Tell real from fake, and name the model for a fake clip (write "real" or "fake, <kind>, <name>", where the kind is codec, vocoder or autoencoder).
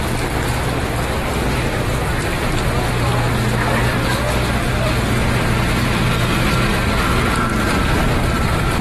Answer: real